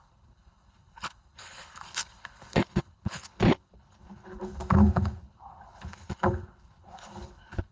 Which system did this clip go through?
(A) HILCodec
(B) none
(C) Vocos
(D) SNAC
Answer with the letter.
A